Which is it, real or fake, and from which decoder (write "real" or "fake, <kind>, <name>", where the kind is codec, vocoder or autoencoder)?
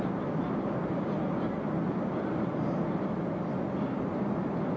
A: real